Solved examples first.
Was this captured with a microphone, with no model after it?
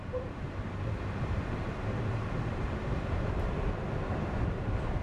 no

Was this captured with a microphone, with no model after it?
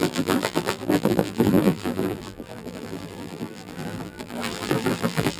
no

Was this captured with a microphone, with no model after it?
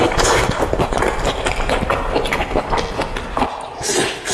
yes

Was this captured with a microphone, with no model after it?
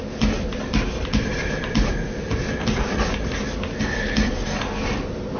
yes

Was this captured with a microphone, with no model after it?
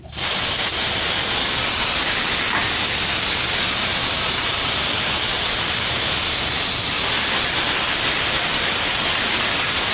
yes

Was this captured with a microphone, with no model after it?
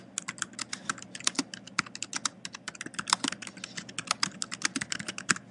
yes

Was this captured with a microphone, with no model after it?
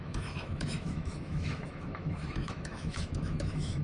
no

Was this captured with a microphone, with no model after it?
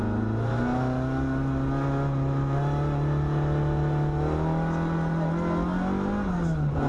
yes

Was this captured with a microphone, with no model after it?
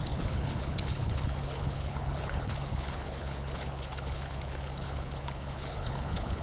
no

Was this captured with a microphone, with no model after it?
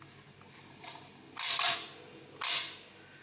yes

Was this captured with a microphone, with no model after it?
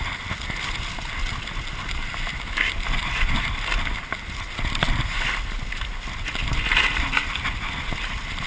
yes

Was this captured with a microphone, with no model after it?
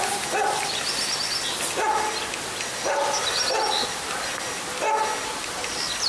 yes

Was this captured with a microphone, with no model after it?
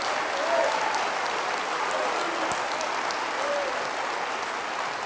yes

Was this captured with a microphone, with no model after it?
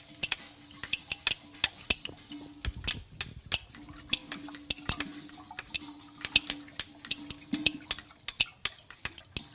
yes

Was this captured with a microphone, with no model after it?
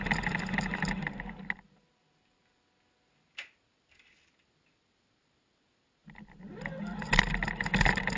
yes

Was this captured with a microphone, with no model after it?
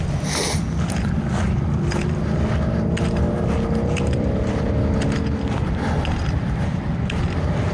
yes